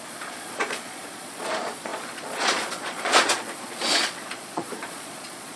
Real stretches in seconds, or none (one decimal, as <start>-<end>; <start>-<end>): none